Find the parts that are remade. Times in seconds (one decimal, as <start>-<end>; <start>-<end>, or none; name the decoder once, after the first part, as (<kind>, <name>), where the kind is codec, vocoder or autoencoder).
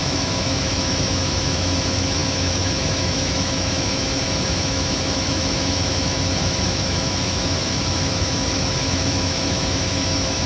0.0-10.5 (autoencoder, DAC-VAE)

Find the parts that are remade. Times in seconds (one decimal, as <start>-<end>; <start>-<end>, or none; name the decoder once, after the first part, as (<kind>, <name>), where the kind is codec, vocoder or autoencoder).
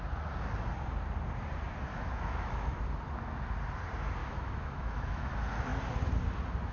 1.9-2.8 (autoencoder, DAC-VAE); 4.2-5.3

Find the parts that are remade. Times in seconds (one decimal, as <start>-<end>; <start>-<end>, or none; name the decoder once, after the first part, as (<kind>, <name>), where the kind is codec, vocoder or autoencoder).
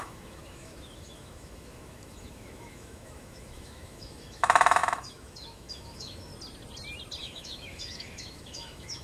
0.0-6.3 (autoencoder, DAC-VAE); 7.2-9.0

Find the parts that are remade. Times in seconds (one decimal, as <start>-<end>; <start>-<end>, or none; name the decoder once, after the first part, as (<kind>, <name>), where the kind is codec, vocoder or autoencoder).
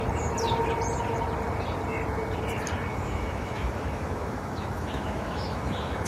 2.9-6.1 (autoencoder, DAC-VAE)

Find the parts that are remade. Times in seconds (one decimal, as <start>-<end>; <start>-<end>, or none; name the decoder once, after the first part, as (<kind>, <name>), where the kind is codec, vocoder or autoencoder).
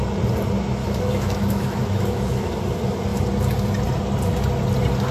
0.8-2.5 (autoencoder, DAC-VAE)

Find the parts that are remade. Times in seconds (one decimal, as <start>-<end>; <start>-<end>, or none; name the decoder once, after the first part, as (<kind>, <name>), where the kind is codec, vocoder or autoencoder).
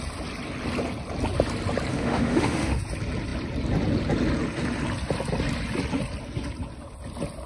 1.9-2.8 (autoencoder, DAC-VAE)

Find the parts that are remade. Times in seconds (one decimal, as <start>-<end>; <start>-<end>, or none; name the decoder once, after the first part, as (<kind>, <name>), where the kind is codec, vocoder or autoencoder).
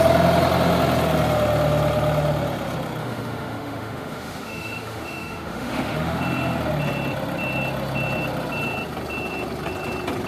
3.0-6.2 (autoencoder, DAC-VAE)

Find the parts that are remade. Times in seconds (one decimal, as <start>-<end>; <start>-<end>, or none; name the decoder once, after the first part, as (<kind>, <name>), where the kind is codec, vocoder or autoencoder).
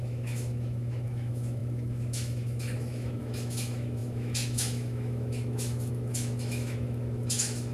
0.0-7.7 (autoencoder, DAC-VAE)